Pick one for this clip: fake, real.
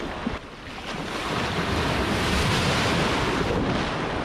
real